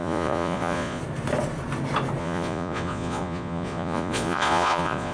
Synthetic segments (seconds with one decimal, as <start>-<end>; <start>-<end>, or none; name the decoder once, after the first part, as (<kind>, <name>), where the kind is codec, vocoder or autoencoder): 0.0-1.0 (vocoder, Vocos); 2.2-5.1